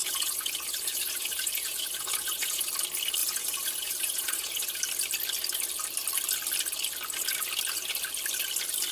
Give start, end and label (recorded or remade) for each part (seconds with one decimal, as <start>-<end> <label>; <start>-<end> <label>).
0.0-2.7 remade; 2.7-3.2 recorded; 3.2-4.8 remade; 4.8-8.9 recorded